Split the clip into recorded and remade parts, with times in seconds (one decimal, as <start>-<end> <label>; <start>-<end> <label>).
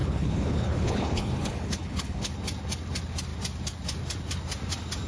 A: 0.0-2.3 remade; 2.3-5.1 recorded